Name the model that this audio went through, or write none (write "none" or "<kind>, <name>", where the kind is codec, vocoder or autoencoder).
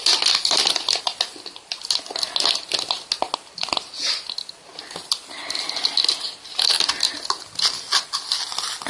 none